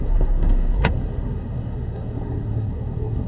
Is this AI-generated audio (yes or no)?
yes